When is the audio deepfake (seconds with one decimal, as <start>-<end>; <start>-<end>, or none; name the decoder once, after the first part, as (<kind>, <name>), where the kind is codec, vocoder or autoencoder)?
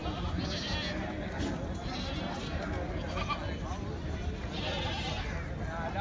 none